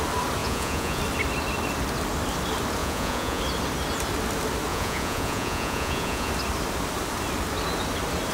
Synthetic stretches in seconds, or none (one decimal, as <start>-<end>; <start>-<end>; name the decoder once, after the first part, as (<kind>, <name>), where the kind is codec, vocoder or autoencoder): 0.4-1.0 (vocoder, Vocos); 2.8-3.4; 4.7-6.3